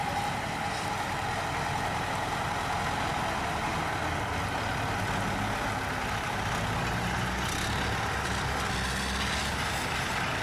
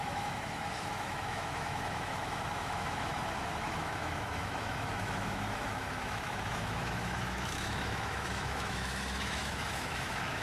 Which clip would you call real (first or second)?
first